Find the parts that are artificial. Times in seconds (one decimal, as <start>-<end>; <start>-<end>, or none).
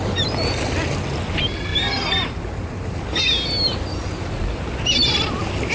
none